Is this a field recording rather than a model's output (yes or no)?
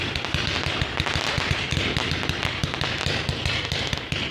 yes